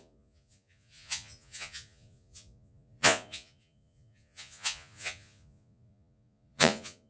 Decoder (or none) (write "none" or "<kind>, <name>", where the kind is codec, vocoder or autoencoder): vocoder, Vocos